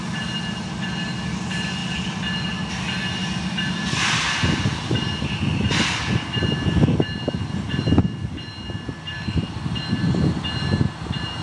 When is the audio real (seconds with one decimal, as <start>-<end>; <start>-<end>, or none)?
0.0-11.4